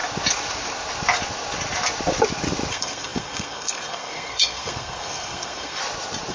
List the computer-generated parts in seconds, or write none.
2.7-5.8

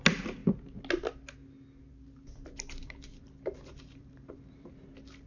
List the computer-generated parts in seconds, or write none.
2.8-4.8

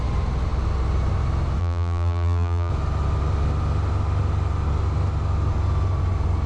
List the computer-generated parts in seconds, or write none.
1.6-2.7

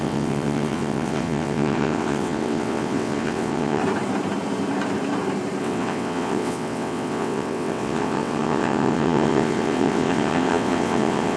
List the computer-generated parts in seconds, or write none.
0.0-3.8; 5.6-11.4